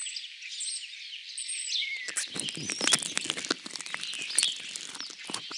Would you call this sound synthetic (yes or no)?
no